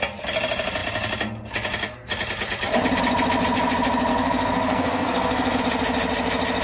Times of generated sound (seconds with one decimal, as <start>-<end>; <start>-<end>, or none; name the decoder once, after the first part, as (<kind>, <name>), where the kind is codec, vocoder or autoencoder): 4.1-5.6 (codec, SNAC)